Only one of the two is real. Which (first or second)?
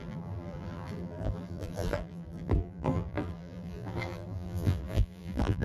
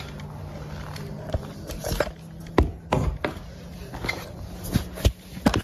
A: second